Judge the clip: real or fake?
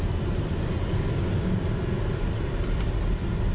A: real